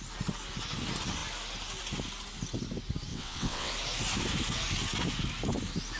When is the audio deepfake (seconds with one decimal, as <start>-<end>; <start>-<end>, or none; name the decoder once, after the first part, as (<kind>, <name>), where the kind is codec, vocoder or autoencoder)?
3.1-3.7 (vocoder, WaveNeXt)